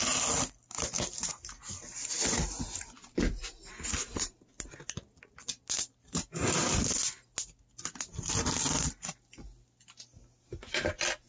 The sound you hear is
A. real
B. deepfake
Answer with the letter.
A